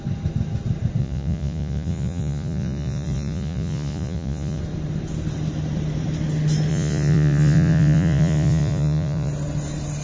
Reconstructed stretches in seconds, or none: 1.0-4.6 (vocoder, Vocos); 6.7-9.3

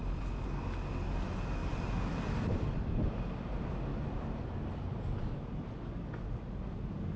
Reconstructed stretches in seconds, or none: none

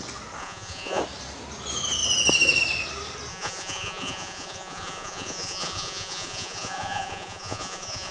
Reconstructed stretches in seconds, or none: 0.4-1.0 (vocoder, Vocos); 3.3-8.1

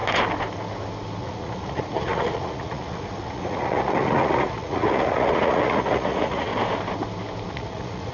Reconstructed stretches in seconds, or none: 1.2-6.5 (vocoder, Vocos); 7.5-8.1

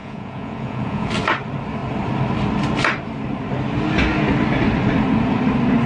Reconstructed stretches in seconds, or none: 0.0-1.1 (vocoder, Vocos)

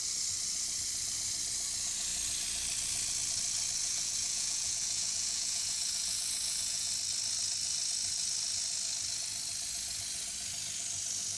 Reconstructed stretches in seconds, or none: 3.8-6.9 (vocoder, Vocos)

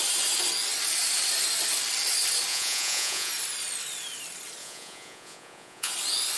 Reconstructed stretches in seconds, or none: 2.5-3.3 (vocoder, Vocos); 4.6-5.9